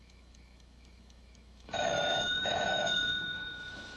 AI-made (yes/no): yes